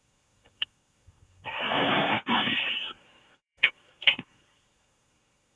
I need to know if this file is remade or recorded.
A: remade